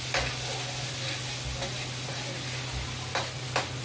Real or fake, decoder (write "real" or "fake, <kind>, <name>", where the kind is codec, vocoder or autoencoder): real